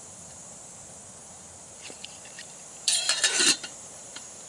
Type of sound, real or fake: fake